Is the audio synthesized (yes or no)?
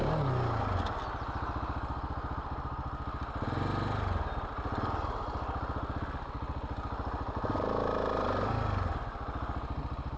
no